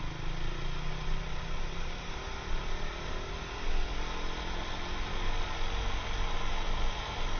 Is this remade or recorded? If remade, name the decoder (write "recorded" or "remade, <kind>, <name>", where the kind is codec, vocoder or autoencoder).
recorded